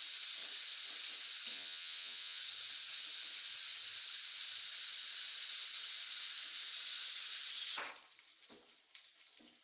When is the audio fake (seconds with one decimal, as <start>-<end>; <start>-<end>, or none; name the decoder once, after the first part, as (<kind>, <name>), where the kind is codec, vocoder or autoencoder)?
1.5-2.4 (vocoder, Vocos)